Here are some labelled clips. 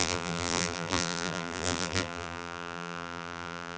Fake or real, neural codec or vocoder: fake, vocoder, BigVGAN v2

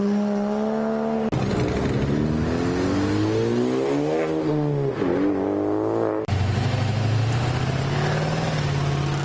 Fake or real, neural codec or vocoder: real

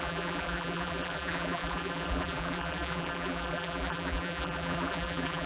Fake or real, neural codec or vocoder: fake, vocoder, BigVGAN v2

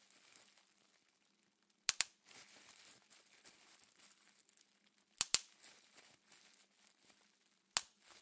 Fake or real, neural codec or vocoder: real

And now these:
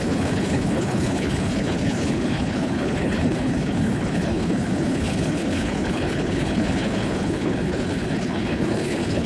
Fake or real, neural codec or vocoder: fake, codec, HILCodec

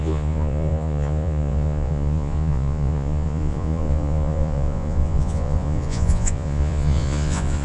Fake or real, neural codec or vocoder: fake, vocoder, Vocos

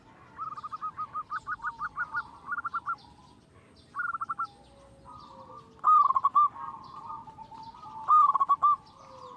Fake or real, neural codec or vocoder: real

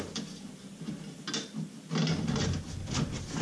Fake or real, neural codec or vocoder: real